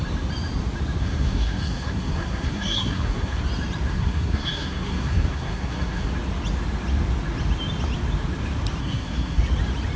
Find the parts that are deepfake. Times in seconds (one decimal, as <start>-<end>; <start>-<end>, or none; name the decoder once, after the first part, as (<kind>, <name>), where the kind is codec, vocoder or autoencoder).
1.0-3.4 (codec, SNAC); 3.9-6.1; 8.8-9.4

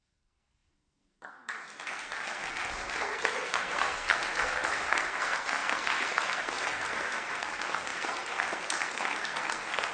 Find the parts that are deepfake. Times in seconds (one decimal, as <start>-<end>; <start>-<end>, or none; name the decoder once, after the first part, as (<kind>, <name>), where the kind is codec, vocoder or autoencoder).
0.0-9.9 (codec, SNAC)

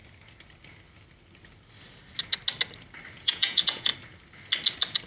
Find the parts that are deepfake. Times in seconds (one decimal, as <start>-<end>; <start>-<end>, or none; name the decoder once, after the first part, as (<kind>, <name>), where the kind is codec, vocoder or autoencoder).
3.1-3.9 (vocoder, Vocos)

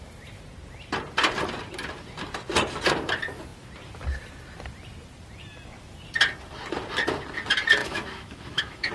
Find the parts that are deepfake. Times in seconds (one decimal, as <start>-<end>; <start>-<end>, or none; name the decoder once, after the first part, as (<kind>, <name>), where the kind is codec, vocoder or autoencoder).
7.8-8.9 (autoencoder, DAC-VAE)

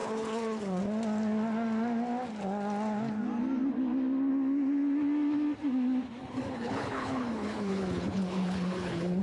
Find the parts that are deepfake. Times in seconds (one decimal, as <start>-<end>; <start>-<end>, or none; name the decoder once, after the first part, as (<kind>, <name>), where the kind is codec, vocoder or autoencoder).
0.0-0.8 (codec, HILCodec); 6.2-9.2

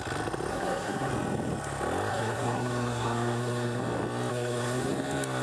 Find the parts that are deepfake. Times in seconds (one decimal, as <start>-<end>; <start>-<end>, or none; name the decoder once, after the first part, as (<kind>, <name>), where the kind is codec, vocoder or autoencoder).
0.5-1.1 (codec, SNAC); 2.1-3.8; 4.3-4.9

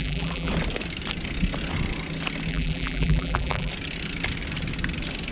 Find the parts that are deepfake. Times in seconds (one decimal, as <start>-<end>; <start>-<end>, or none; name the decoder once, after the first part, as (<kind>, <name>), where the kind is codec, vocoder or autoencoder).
0.0-0.5 (vocoder, BigVGAN v2); 2.5-3.7